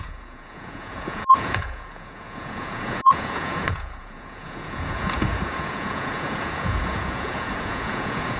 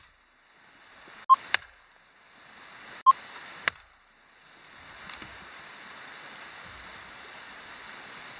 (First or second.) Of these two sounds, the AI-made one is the first